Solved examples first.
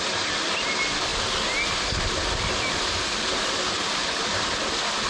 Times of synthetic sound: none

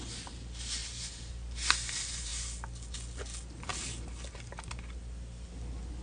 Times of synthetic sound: none

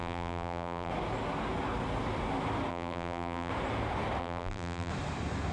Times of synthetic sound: 0.0-0.9 (vocoder, BigVGAN v2); 2.7-3.5; 4.2-4.9